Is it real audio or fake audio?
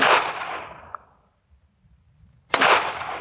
real